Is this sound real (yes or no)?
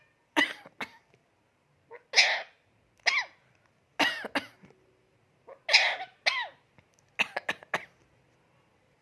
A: yes